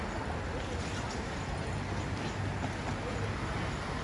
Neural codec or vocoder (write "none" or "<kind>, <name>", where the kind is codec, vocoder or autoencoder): none